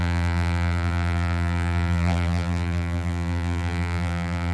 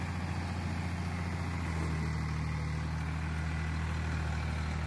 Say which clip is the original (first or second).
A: second